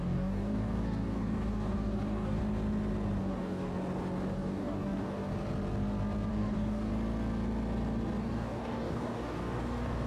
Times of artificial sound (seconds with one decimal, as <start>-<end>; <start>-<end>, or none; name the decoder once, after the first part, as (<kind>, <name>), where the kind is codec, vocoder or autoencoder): 0.0-2.4 (codec, DAC); 3.2-3.7; 4.3-5.3; 6.3-6.9; 8.2-10.1